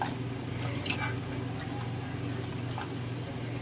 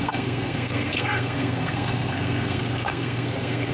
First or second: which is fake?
second